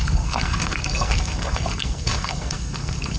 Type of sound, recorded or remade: remade